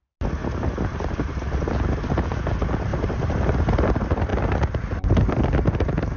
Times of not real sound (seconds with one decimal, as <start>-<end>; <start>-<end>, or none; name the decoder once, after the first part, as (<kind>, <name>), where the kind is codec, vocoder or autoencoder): 0.4-1.6 (vocoder, BigVGAN v2); 2.9-3.4